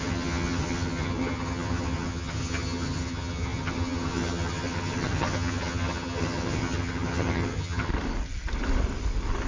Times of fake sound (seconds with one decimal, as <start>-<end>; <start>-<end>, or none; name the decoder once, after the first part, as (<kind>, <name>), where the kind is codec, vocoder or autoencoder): 0.0-7.9 (vocoder, HiFi-GAN)